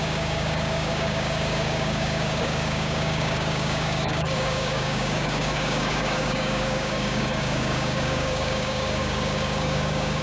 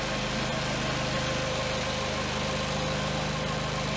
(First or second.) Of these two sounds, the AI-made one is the first